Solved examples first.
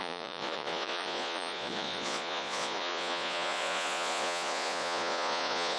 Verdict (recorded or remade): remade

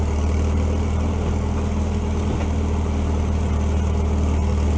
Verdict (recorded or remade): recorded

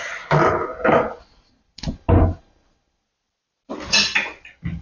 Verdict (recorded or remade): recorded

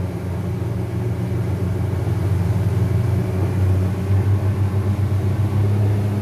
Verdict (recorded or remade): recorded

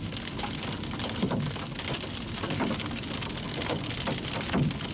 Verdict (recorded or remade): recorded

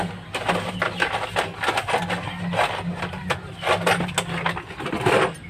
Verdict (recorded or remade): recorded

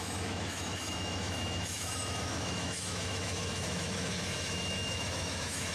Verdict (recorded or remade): remade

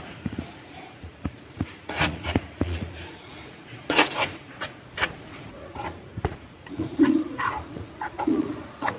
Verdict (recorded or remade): remade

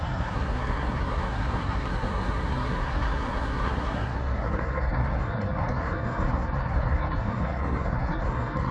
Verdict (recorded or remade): remade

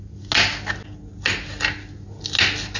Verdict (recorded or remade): recorded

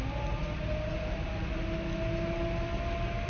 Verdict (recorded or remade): recorded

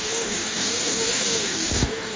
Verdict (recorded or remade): remade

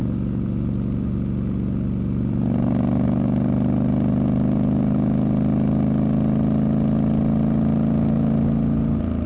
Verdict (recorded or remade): recorded